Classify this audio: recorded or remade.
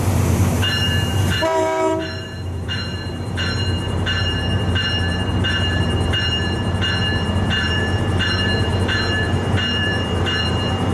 remade